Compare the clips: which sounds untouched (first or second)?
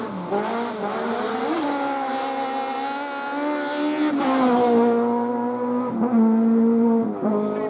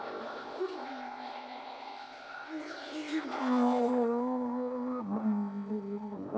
first